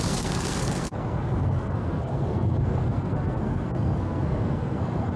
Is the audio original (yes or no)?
no